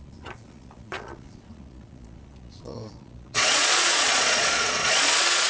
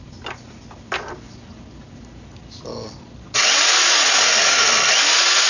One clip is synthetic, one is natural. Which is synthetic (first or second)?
first